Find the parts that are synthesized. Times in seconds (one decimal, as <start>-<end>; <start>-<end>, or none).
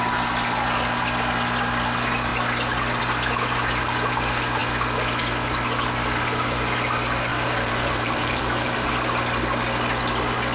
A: 7.3-8.9